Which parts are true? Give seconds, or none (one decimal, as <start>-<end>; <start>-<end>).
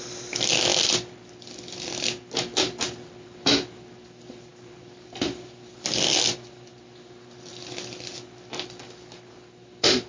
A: 0.0-10.1